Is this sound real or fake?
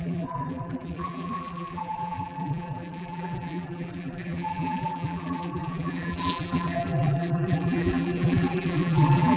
fake